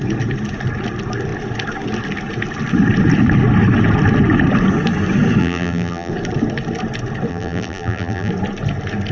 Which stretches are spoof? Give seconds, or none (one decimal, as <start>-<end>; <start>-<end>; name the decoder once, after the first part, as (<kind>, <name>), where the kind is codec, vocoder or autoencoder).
5.4-6.1 (vocoder, BigVGAN v2); 7.3-8.3